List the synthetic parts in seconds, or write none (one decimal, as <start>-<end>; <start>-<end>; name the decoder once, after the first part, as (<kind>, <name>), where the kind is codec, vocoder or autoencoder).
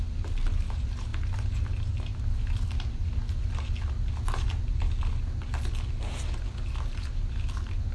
none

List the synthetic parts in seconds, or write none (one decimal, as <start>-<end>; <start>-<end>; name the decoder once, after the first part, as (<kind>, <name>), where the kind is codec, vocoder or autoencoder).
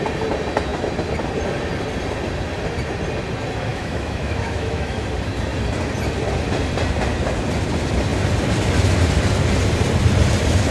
3.7-5.0 (autoencoder, DAC-VAE)